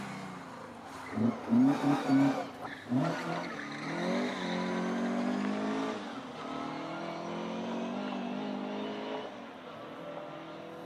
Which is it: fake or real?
real